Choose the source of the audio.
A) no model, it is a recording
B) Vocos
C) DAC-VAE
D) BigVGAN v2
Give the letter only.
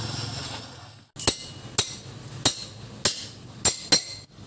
A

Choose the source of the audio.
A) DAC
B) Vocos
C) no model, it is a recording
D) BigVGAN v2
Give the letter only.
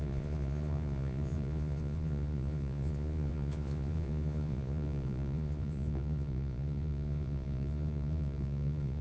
B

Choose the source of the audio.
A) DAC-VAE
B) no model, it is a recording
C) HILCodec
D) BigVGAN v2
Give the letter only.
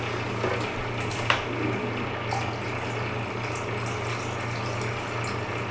B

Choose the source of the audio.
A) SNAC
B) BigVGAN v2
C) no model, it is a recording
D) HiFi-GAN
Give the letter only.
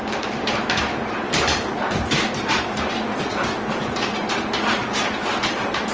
B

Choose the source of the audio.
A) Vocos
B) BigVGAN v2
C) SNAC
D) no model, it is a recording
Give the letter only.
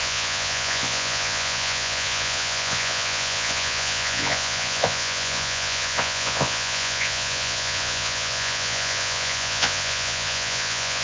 A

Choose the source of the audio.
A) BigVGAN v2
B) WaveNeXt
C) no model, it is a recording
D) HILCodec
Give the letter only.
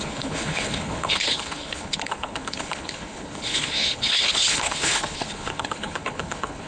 D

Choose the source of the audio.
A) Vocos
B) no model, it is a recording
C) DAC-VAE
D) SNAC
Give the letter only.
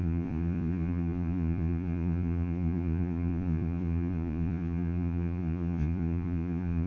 A